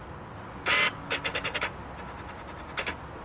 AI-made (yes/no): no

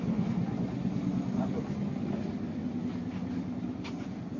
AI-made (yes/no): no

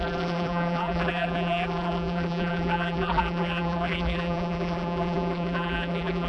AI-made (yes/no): yes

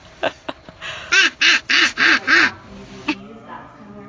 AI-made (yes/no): no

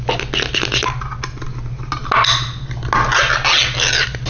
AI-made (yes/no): no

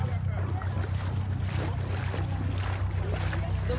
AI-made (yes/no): no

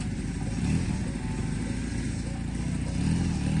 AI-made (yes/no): no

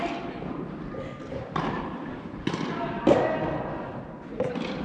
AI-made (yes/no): no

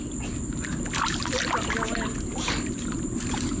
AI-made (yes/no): no